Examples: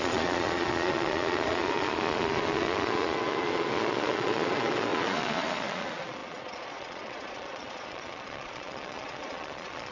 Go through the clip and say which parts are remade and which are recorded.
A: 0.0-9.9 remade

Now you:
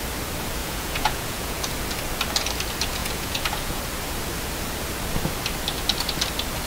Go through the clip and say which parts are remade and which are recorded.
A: 0.0-0.6 recorded; 0.6-1.6 remade; 1.6-3.0 recorded; 3.0-3.8 remade; 3.8-6.7 recorded

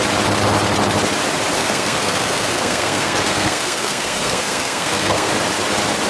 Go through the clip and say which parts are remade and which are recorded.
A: 0.0-1.6 recorded; 1.6-5.3 remade; 5.3-6.1 recorded

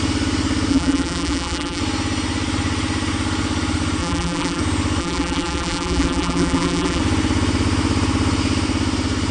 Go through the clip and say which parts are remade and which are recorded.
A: 0.0-0.7 recorded; 0.7-1.8 remade; 1.8-4.0 recorded; 4.0-4.6 remade; 4.6-5.0 recorded; 5.0-7.0 remade; 7.0-9.3 recorded